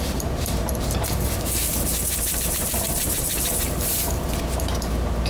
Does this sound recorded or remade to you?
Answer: remade